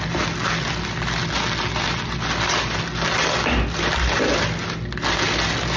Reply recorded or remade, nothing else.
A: recorded